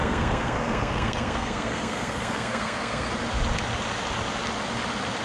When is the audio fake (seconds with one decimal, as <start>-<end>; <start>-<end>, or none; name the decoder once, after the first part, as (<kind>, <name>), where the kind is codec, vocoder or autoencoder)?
0.0-3.1 (codec, SNAC)